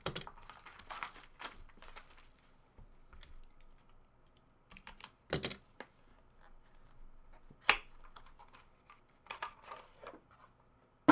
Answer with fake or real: real